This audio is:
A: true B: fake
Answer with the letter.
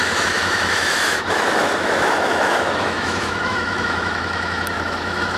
B